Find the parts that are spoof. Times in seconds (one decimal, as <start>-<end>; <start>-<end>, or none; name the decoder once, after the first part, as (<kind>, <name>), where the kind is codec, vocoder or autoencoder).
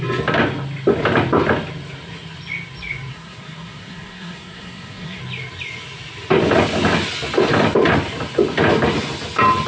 3.1-5.2 (codec, SNAC)